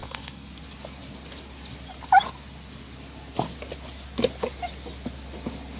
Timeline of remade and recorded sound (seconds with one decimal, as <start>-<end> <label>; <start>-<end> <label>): 0.0-0.5 remade; 0.5-5.8 recorded